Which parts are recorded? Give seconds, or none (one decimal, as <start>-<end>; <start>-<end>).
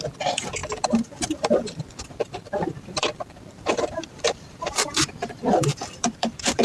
none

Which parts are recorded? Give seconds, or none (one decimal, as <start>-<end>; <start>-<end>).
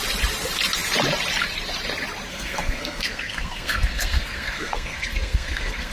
0.0-2.3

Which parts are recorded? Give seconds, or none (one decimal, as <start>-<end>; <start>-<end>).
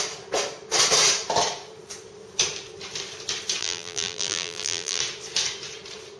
0.0-3.6; 5.0-6.2